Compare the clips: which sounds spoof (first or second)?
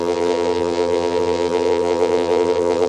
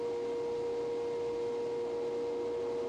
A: first